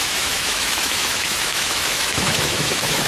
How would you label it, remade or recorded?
remade